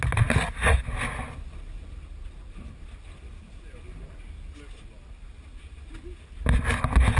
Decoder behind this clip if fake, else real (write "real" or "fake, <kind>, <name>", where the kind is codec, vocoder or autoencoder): real